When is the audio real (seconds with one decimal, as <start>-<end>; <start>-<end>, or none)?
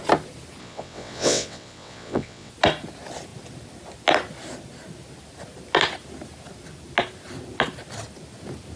0.0-0.6; 2.5-8.8